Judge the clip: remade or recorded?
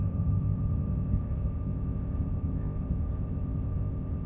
remade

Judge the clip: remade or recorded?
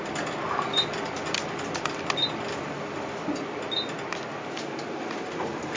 recorded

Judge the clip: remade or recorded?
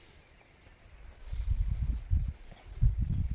recorded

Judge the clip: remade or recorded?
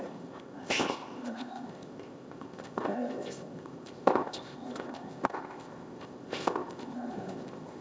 remade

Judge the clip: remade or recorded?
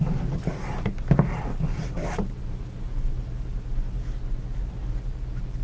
recorded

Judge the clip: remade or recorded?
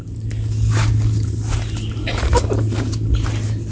recorded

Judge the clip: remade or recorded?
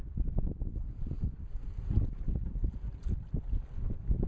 recorded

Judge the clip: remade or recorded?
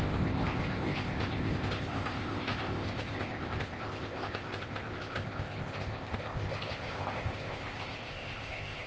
remade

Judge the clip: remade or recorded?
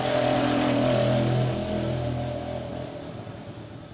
recorded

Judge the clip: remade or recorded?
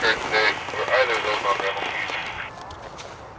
recorded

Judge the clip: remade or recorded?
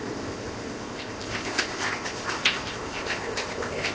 remade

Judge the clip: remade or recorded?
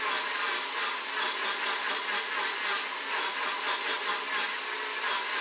recorded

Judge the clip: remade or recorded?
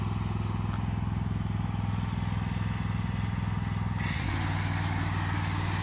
recorded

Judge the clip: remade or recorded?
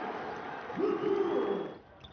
recorded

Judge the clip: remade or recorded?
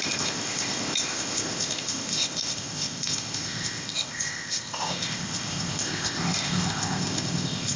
remade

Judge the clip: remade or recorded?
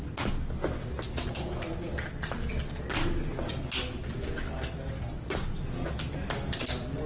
recorded